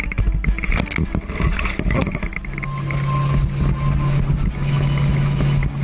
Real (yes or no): yes